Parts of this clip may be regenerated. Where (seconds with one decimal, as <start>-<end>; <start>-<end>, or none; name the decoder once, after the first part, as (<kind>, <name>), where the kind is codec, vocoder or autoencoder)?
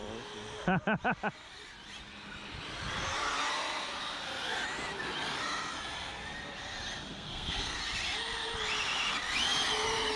7.1-7.8 (codec, SNAC)